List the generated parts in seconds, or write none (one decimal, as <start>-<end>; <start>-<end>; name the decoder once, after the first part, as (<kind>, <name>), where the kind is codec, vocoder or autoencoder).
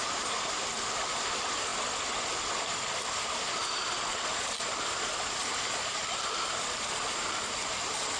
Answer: none